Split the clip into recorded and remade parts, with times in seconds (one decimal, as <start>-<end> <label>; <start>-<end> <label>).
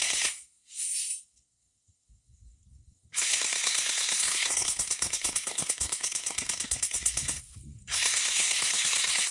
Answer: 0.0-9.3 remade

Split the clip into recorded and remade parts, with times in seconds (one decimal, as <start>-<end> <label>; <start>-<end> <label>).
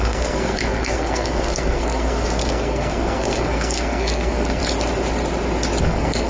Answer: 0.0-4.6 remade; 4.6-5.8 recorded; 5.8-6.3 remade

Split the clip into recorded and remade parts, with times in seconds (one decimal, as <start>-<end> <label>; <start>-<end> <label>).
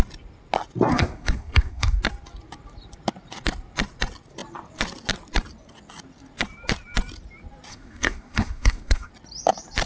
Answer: 0.0-0.9 recorded; 0.9-2.0 remade; 2.0-7.7 recorded; 7.7-9.1 remade; 9.1-9.9 recorded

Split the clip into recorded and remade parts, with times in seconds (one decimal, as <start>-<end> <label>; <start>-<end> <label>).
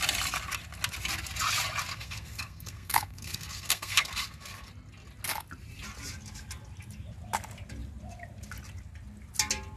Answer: 0.0-1.9 recorded; 1.9-4.7 remade; 4.7-9.8 recorded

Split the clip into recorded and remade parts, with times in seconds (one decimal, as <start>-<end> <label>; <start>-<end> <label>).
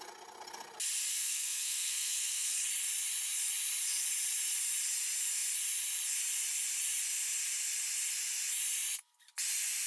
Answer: 0.0-1.1 recorded; 1.1-2.5 remade; 2.5-9.9 recorded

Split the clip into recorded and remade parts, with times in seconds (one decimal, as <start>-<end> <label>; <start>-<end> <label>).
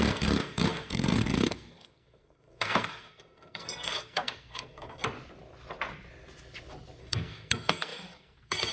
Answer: 0.0-5.0 remade; 5.0-7.0 recorded; 7.0-8.7 remade